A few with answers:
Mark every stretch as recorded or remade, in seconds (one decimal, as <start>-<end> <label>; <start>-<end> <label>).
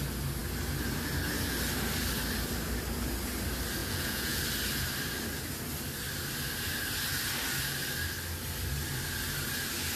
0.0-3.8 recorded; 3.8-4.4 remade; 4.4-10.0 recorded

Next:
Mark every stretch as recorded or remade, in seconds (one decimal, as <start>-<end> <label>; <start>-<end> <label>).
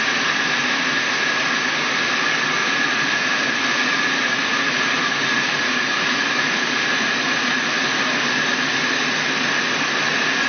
0.0-2.6 recorded; 2.6-7.8 remade; 7.8-10.5 recorded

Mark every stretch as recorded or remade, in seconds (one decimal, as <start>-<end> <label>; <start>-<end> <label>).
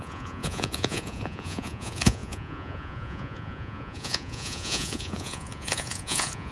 0.0-6.5 remade